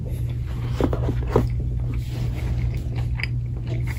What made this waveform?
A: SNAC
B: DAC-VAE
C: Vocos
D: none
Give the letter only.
D